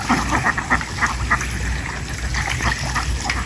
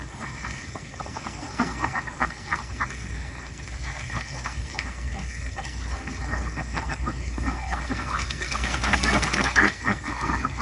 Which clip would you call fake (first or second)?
second